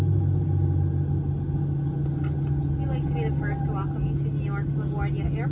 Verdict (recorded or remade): recorded